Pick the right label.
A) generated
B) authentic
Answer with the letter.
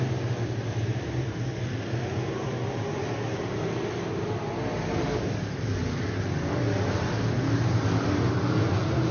B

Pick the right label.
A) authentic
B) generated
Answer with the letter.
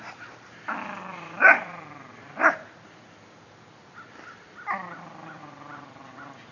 A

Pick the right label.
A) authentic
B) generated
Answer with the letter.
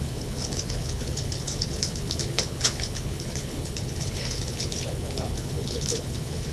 B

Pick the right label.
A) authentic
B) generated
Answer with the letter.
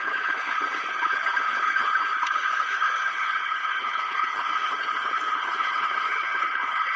B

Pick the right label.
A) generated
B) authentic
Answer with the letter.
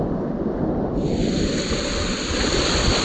B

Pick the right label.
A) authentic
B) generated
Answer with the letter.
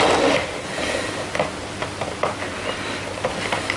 A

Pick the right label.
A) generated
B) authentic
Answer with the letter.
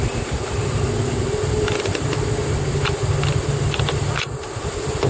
B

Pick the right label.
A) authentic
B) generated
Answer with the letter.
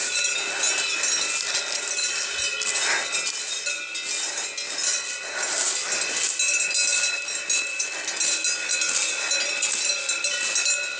A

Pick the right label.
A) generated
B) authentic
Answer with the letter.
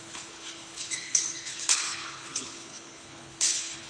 A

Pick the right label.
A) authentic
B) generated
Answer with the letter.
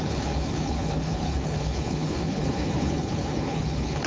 B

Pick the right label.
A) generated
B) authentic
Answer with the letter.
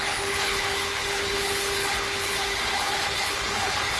A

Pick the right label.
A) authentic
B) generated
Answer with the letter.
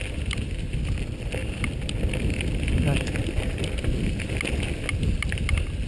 A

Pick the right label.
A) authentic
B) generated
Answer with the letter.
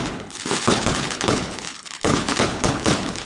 B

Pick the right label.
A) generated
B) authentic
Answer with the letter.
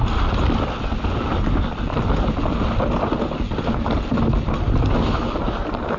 B